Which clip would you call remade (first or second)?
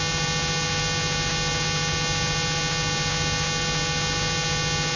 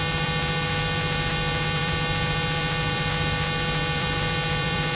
second